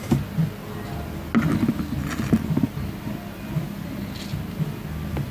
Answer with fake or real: real